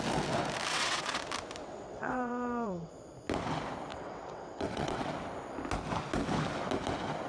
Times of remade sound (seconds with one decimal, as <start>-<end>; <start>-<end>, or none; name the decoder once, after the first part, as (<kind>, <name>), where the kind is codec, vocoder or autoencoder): 0.7-1.2 (vocoder, WaveNeXt); 1.6-2.9; 3.9-5.1